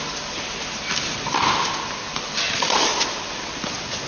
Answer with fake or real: real